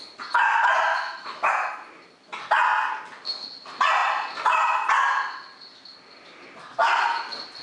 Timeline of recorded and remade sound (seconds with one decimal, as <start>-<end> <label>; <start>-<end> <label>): 0.0-0.9 recorded; 0.9-1.5 remade; 1.5-7.6 recorded